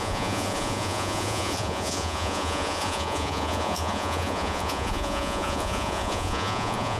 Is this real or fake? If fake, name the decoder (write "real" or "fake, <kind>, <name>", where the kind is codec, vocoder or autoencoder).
fake, vocoder, Vocos